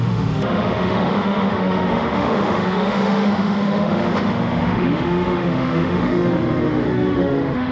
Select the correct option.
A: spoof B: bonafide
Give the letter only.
A